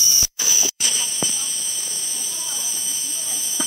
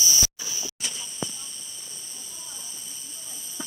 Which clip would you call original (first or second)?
second